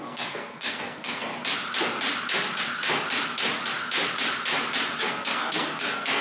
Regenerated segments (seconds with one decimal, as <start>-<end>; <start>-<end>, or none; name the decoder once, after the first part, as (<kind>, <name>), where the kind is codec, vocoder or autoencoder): 0.0-1.3 (codec, SNAC); 5.0-6.2